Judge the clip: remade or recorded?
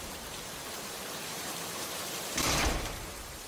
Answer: remade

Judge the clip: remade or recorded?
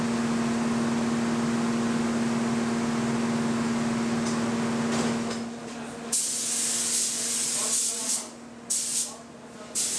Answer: recorded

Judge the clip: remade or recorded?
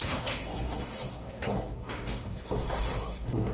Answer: remade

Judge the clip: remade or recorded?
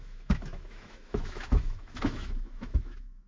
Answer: remade